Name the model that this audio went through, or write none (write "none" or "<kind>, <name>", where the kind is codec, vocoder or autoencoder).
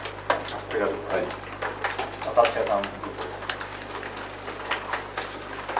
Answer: none